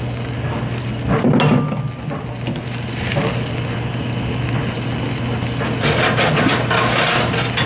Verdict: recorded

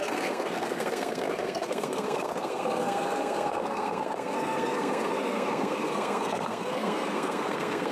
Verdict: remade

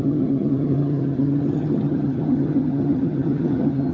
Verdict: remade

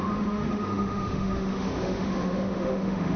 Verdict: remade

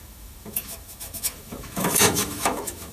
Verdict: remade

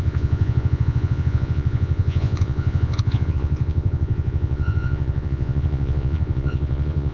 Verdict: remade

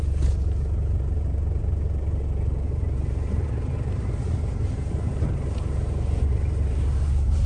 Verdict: remade